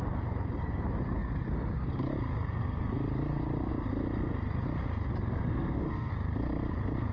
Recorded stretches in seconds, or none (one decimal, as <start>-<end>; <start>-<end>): 0.0-5.5; 6.1-7.1